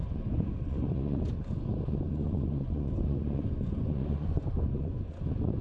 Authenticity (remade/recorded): remade